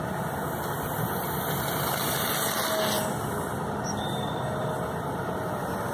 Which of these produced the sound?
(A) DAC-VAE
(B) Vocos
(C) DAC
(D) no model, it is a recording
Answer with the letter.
D